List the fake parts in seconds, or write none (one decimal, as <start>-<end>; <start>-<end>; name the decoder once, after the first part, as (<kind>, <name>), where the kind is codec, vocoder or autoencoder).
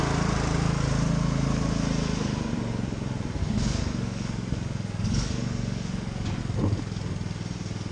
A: 3.4-6.4 (codec, DAC)